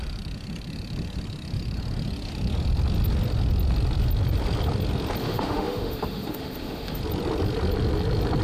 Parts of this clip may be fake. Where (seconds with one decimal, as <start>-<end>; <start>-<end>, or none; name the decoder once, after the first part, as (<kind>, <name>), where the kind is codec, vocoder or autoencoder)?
5.2-7.0 (autoencoder, DAC-VAE)